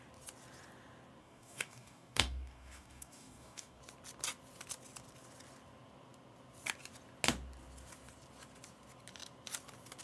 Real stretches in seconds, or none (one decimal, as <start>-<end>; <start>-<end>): 0.0-1.2; 3.8-10.0